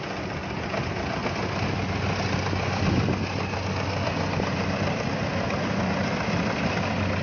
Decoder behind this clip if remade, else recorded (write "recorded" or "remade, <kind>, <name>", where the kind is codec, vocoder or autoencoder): recorded